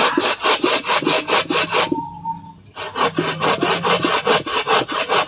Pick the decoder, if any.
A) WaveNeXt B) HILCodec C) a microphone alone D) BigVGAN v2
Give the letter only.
C